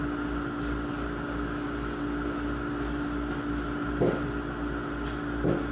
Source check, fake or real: real